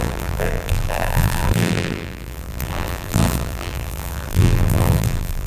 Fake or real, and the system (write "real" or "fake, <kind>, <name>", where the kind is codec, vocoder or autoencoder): fake, vocoder, BigVGAN v2